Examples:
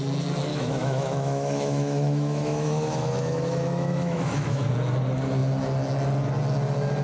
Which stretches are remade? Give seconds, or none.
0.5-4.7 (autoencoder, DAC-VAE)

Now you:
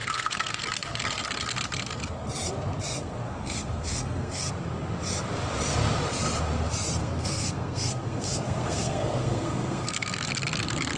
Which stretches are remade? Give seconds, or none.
0.0-0.6 (codec, SNAC); 3.0-4.5; 7.0-10.3

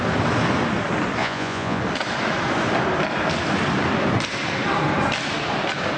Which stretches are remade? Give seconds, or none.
1.2-1.8 (vocoder, Vocos)

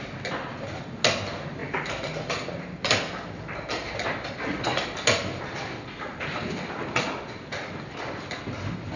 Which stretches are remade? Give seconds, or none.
none

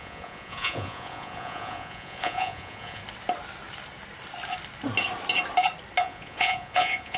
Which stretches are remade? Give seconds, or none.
0.0-3.0 (vocoder, Vocos); 6.0-7.2

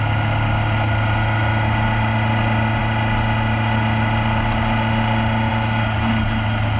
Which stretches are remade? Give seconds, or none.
none

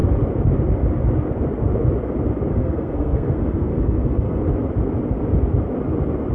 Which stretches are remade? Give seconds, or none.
2.5-4.4 (codec, SNAC)